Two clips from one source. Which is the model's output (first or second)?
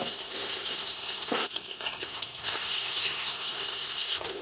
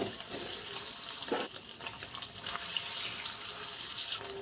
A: first